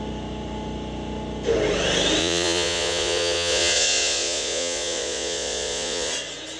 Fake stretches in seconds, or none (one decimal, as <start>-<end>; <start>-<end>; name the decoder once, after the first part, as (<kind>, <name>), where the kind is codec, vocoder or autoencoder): 2.2-6.1 (vocoder, Vocos)